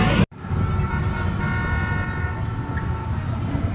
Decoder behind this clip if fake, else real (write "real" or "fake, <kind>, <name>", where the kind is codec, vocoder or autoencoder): real